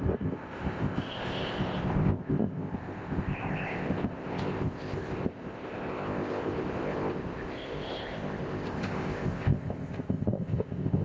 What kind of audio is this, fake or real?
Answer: fake